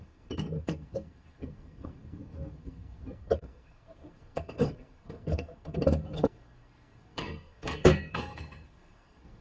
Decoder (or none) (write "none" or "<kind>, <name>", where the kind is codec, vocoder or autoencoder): codec, SNAC